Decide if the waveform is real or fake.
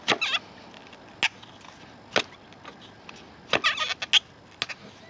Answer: real